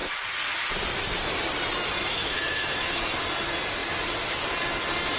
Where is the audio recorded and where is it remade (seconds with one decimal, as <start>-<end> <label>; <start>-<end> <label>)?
0.0-2.1 recorded; 2.1-3.2 remade; 3.2-5.2 recorded